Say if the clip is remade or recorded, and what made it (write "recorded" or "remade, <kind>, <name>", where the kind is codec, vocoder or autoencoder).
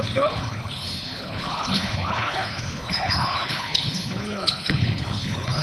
remade, codec, HILCodec